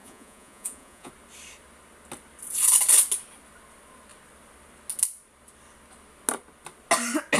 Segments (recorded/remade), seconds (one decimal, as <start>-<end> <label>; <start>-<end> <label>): 0.0-1.1 remade; 1.1-7.4 recorded

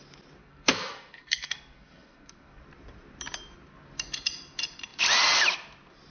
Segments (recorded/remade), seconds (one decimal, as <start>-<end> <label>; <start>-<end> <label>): 0.0-0.4 recorded; 0.4-2.6 remade; 2.6-6.1 recorded